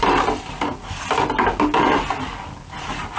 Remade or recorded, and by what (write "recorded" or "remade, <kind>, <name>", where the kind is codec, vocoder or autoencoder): recorded